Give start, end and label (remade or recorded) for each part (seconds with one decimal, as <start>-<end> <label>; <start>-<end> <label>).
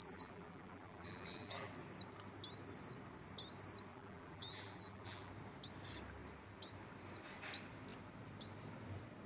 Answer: 0.0-1.7 remade; 1.7-3.9 recorded; 3.9-5.3 remade; 5.3-9.3 recorded